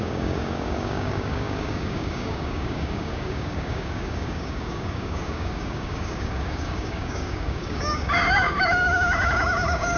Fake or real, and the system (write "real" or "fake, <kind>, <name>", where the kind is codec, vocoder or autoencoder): fake, codec, DAC